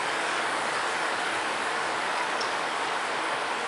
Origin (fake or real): fake